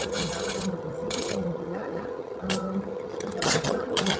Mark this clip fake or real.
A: fake